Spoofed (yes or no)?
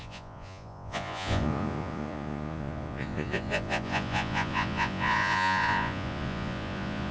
yes